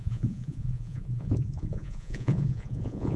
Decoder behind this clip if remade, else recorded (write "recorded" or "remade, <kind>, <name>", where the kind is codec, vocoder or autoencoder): remade, vocoder, Vocos